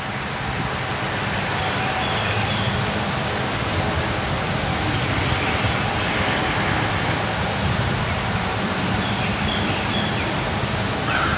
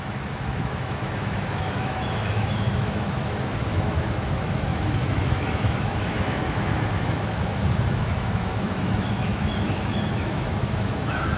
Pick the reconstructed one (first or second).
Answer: second